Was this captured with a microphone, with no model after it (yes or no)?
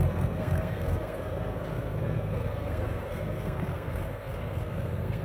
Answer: no